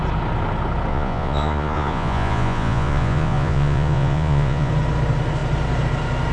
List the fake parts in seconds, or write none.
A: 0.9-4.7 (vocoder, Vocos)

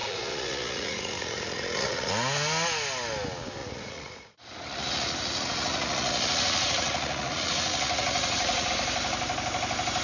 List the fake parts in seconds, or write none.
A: 0.0-2.1 (vocoder, Vocos); 3.6-8.7

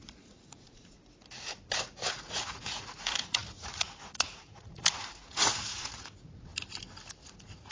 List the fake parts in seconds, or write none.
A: 0.0-1.0 (vocoder, Vocos); 2.2-6.5; 7.2-7.7

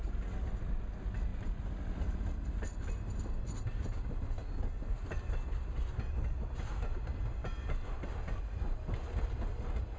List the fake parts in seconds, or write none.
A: none